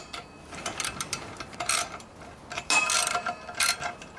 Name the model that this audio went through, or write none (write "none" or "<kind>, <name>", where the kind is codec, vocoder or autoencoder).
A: none